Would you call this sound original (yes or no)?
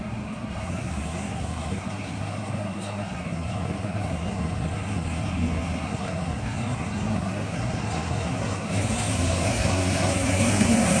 no